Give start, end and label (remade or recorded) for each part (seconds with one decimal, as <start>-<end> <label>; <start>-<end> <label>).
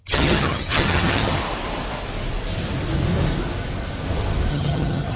0.0-1.4 remade; 1.4-4.5 recorded; 4.5-5.2 remade